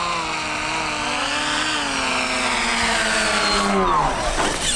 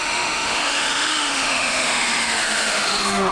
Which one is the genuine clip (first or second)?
first